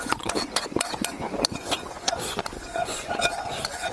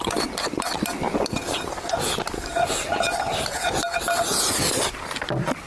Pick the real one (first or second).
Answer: second